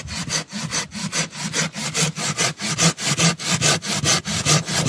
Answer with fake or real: real